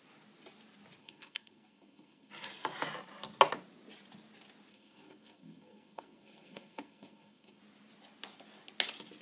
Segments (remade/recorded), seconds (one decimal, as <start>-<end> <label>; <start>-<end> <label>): 0.0-1.0 recorded; 1.0-2.3 remade; 2.3-4.7 recorded; 4.7-7.6 remade; 7.6-9.2 recorded